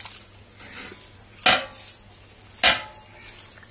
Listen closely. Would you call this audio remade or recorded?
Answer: recorded